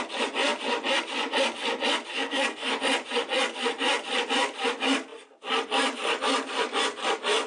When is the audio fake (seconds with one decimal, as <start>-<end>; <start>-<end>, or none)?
2.1-2.7